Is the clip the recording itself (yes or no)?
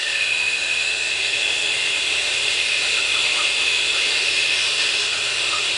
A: no